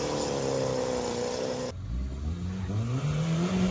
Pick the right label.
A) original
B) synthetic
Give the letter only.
A